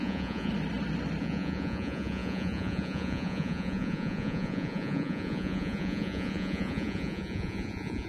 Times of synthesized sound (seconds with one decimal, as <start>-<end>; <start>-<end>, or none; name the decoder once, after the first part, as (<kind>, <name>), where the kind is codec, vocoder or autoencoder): 0.0-0.5 (vocoder, Vocos); 1.2-8.1